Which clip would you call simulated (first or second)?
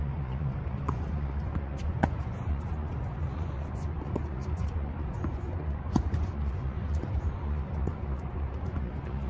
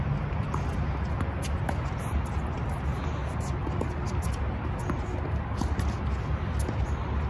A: first